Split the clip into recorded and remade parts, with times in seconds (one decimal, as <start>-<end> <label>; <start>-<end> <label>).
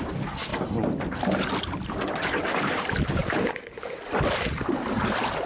0.0-5.5 recorded